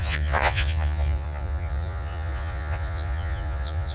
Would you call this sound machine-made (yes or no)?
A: yes